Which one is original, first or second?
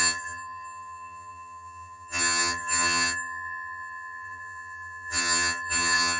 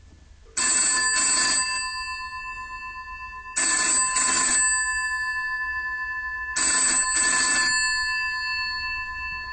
second